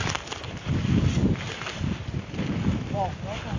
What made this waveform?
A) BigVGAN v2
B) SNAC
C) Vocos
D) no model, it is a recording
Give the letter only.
D